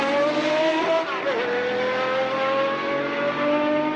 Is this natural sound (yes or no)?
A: yes